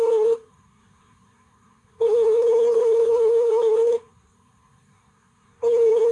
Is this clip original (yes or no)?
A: no